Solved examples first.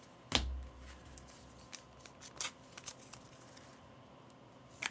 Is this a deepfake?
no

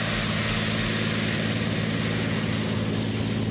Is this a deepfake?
no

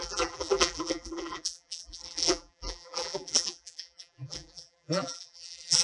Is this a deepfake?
yes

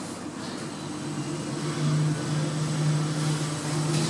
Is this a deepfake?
no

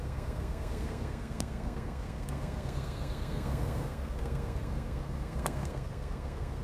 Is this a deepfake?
yes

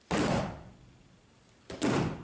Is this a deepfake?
no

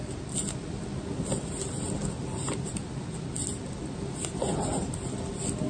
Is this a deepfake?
no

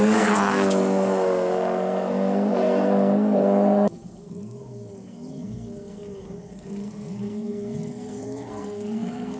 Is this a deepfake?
yes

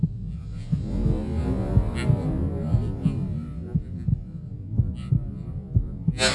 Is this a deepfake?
no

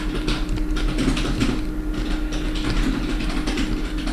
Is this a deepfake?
no